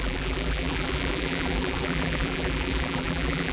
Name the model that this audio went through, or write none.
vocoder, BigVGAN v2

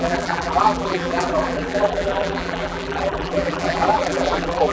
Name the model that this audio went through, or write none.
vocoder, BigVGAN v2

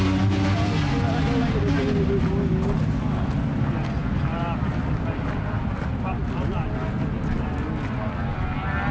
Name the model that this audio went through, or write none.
none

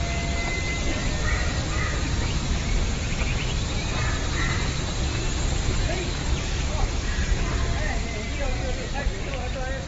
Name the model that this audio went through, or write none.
none